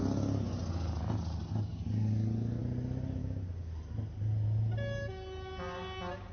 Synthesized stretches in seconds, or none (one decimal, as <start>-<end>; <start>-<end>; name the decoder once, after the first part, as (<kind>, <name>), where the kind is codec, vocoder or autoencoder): 3.2-3.7 (codec, DAC)